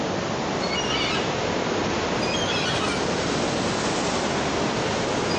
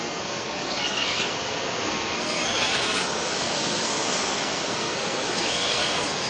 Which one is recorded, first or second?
first